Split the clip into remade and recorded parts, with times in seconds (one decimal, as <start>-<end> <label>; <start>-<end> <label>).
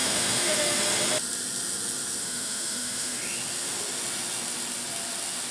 0.0-0.8 remade; 0.8-2.2 recorded; 2.2-3.2 remade; 3.2-5.5 recorded